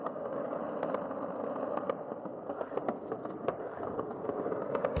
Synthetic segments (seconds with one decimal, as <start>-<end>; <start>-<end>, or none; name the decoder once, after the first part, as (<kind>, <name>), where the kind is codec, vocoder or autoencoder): 0.0-0.6 (codec, DAC); 3.6-5.0

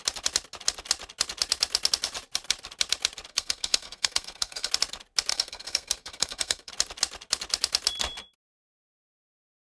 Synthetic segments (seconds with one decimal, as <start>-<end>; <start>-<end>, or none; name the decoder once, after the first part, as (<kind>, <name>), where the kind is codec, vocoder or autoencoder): 3.3-4.7 (codec, SNAC); 5.3-6.7

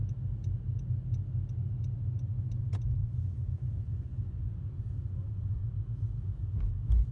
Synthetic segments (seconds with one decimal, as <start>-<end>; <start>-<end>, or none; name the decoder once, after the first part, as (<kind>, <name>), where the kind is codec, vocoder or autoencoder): 3.0-4.6 (vocoder, Vocos)

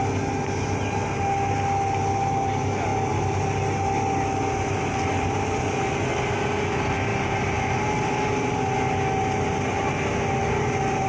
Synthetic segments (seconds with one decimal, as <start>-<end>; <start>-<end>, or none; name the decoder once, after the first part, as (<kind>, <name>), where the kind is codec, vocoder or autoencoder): none